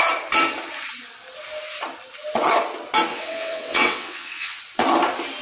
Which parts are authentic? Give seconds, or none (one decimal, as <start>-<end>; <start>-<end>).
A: 0.0-3.1; 4.6-5.4